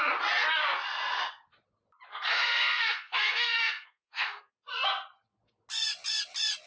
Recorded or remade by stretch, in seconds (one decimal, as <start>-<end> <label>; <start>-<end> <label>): 0.0-2.1 recorded; 2.1-4.5 remade; 4.5-6.7 recorded